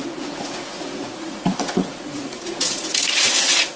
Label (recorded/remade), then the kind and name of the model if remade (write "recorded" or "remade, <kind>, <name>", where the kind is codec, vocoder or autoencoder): remade, vocoder, Vocos